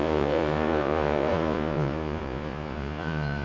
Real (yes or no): no